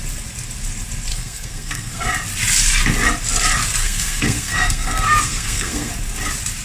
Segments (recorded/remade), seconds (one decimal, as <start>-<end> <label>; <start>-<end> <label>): 0.0-1.1 recorded; 1.1-2.0 remade; 2.0-3.8 recorded; 3.8-5.9 remade; 5.9-6.6 recorded